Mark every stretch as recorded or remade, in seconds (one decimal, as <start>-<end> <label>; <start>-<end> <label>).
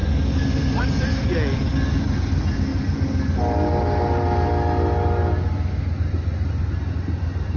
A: 0.0-7.6 recorded